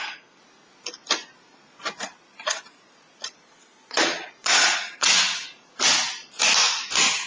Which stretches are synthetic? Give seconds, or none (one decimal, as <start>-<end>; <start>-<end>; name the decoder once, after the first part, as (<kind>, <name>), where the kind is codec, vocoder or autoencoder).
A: 2.1-5.4 (vocoder, Vocos)

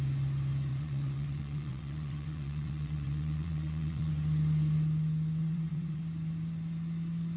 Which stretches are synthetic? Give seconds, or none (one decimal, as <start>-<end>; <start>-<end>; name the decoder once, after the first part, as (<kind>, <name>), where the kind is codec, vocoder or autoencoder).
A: 0.7-4.1 (vocoder, WaveNeXt); 5.4-6.0

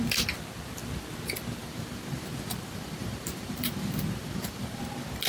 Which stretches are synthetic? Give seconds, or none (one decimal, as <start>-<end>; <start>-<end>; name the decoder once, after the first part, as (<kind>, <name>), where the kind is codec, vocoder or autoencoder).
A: 1.6-4.8 (vocoder, BigVGAN v2)

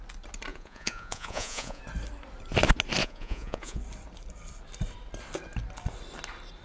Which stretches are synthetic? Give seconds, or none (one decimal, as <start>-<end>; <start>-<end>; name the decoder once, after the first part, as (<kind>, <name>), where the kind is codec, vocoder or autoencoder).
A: 0.5-1.8 (vocoder, Vocos); 3.0-3.8

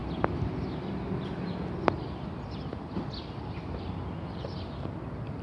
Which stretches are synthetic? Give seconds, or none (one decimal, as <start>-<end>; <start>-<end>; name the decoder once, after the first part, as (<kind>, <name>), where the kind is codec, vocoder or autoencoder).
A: none